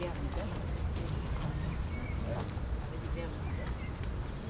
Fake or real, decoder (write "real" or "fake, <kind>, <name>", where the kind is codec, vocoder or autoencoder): real